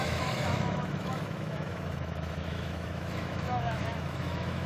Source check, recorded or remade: remade